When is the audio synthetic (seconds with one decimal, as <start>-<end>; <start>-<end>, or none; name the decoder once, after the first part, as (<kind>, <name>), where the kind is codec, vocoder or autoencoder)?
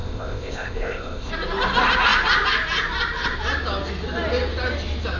0.0-1.3 (codec, ZipCodec)